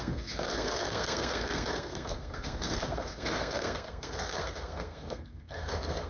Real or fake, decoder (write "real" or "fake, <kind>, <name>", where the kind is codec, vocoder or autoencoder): fake, codec, SNAC